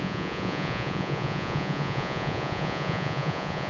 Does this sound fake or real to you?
fake